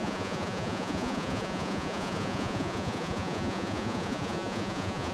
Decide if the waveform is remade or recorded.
remade